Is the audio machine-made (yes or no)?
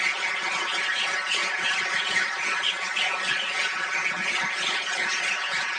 yes